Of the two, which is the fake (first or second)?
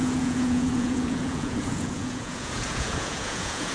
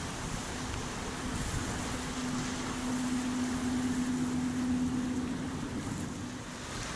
first